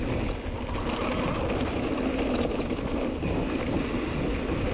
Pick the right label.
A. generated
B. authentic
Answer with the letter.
B